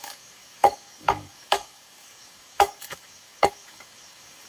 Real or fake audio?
fake